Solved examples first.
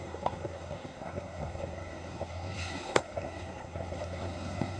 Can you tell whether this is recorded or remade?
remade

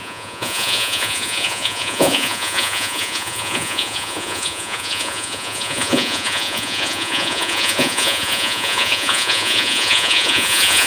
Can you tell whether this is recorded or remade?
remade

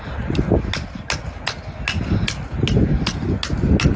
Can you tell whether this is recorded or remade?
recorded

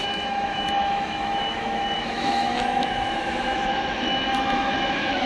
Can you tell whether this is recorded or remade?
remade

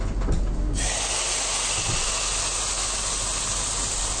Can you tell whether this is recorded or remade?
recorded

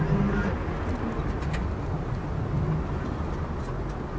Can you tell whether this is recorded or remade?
recorded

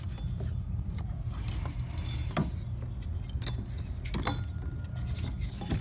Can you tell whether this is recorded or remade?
recorded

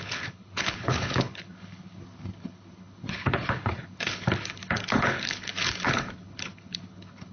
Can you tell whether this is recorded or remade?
remade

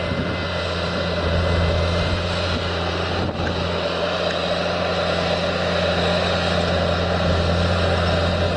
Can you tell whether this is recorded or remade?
recorded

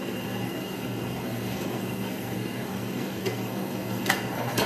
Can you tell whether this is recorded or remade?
remade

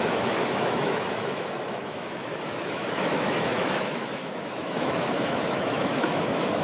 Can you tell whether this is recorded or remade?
remade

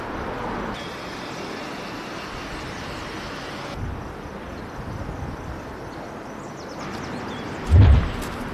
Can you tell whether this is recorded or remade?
recorded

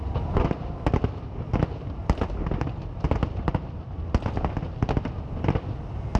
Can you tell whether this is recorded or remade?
recorded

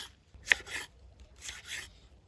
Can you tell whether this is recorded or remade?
remade